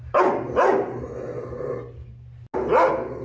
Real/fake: real